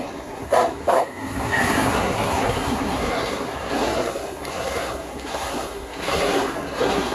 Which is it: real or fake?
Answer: fake